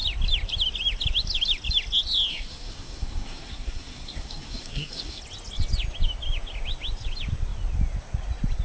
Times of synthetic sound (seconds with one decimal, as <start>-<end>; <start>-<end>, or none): 2.3-5.2

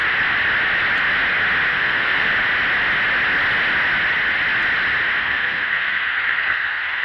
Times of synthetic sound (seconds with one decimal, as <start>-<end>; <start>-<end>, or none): 1.7-2.3; 5.2-7.0

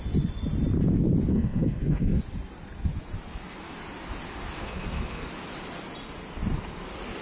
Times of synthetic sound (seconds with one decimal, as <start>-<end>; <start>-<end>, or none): 1.3-2.2; 4.6-5.3